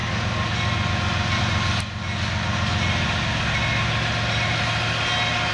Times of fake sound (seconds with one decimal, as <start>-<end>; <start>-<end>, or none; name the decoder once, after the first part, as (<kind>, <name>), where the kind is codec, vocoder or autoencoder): none